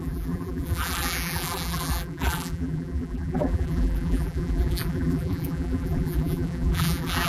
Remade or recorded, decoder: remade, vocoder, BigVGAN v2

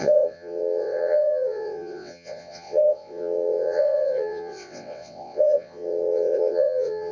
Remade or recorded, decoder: remade, vocoder, WaveNeXt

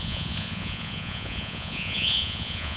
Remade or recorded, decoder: remade, vocoder, Vocos